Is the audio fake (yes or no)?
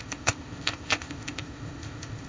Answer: yes